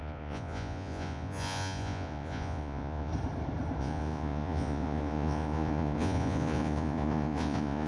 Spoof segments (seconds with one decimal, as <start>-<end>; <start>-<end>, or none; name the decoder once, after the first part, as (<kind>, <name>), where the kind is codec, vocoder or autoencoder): 0.0-3.1 (vocoder, Vocos); 3.8-7.9